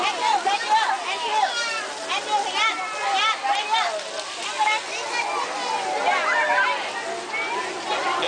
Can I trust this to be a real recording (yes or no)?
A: yes